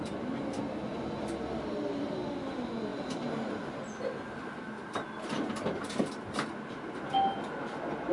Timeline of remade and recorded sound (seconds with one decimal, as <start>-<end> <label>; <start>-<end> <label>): 0.0-8.1 recorded